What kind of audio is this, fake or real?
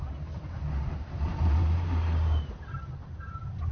real